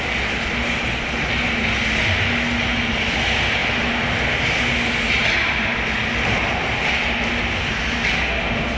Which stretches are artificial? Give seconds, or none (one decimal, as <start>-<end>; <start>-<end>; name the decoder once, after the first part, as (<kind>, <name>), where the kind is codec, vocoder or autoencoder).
none